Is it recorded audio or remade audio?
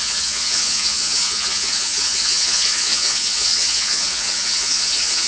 remade